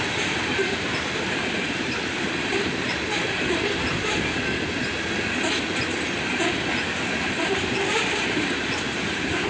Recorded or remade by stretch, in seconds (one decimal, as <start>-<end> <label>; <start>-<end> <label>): 0.0-2.9 remade; 2.9-6.2 recorded; 6.2-9.5 remade